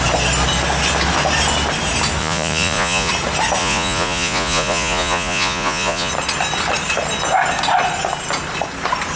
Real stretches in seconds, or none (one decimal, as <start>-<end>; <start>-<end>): 0.0-2.2; 3.1-3.6; 6.1-9.2